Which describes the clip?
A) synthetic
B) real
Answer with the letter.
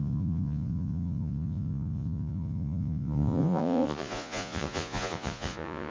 A